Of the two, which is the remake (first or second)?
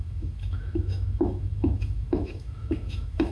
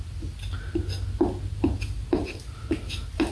first